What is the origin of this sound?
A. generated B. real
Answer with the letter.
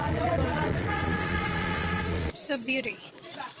A